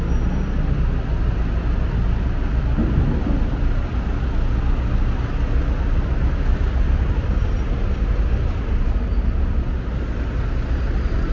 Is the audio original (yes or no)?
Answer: yes